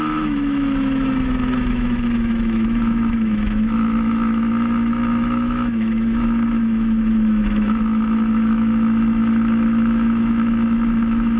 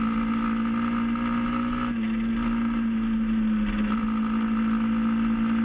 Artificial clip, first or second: first